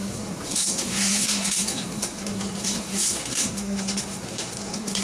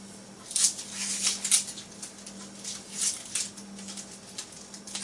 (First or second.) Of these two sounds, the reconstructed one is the first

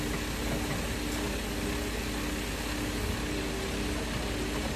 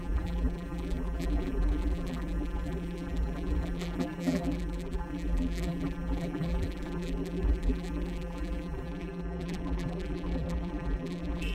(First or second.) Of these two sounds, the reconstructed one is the second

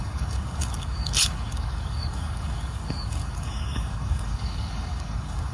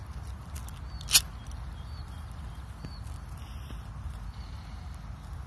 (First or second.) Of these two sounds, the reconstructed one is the first